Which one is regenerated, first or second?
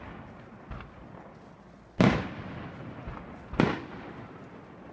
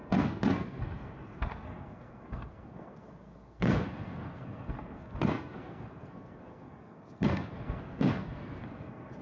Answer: second